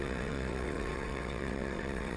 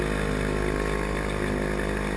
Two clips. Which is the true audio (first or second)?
second